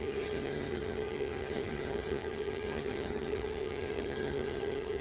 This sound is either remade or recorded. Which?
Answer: remade